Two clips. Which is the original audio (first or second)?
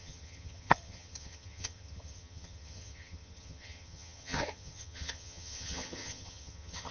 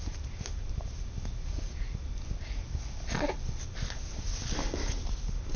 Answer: second